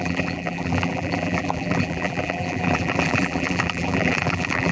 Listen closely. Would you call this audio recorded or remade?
remade